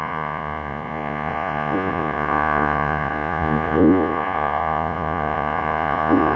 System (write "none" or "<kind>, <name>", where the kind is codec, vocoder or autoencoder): vocoder, Vocos